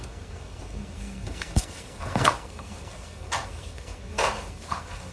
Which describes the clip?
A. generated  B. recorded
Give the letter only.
A